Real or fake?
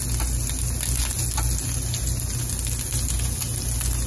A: real